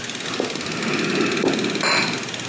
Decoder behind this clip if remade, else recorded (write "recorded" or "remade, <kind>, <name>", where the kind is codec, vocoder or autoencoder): recorded